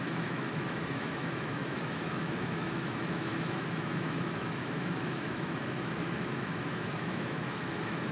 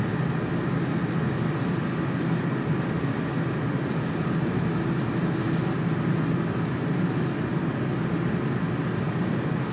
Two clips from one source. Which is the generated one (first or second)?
first